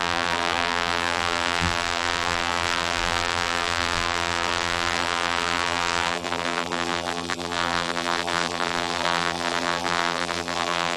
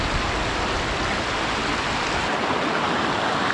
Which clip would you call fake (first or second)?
first